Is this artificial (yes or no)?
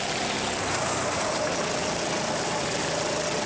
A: no